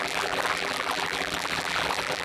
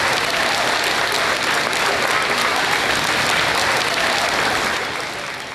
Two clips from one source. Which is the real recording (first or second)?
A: second